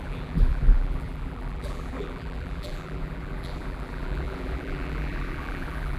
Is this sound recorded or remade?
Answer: remade